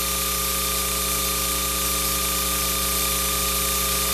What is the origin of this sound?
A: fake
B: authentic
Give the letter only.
B